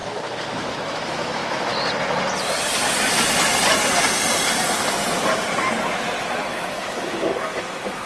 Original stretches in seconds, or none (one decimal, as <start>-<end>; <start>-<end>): 0.0-0.7; 1.7-6.5